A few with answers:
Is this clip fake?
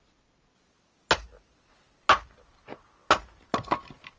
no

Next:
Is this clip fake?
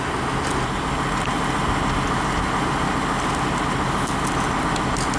no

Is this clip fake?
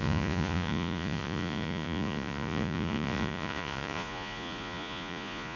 yes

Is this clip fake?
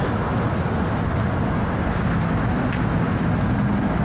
no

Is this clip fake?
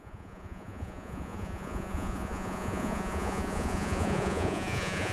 yes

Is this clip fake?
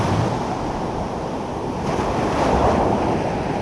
no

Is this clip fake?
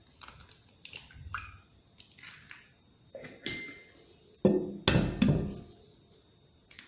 no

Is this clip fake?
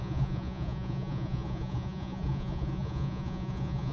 yes